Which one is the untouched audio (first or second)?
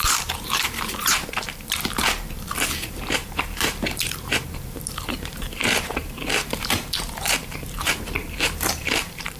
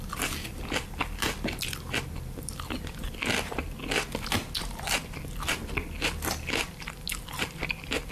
second